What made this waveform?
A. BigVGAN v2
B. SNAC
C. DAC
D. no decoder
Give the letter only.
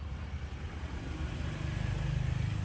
D